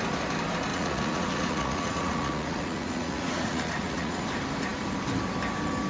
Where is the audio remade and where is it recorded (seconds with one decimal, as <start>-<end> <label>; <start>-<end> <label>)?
0.0-0.7 recorded; 0.7-4.2 remade; 4.2-5.9 recorded